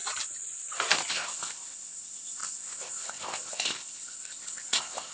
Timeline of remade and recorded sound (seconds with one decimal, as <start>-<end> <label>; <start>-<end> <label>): 0.0-1.1 recorded; 1.1-5.1 remade